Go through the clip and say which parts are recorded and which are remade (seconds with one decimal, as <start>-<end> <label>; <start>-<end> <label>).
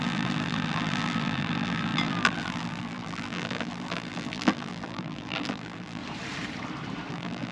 0.0-6.0 remade; 6.0-7.1 recorded; 7.1-7.5 remade